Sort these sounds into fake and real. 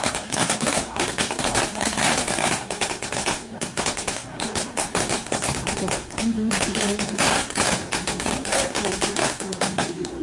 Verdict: fake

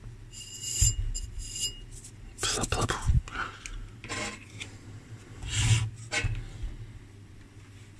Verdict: real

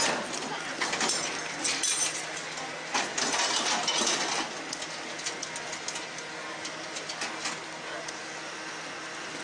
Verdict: real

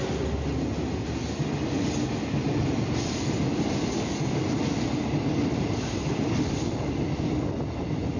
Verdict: real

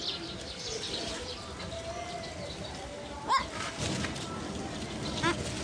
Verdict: real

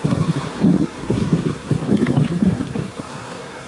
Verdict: fake